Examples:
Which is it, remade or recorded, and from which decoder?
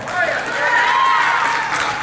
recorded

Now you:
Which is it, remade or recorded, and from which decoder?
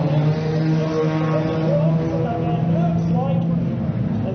recorded